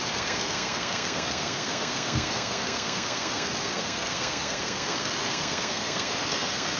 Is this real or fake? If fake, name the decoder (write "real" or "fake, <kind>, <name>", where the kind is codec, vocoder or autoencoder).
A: fake, codec, SNAC